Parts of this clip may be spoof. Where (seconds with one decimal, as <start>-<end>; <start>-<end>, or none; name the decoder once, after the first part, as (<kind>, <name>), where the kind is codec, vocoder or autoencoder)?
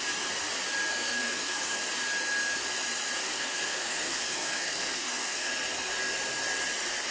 0.9-1.8 (codec, SNAC); 3.3-5.5